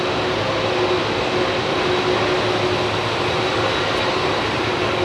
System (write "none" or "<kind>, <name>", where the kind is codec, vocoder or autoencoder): none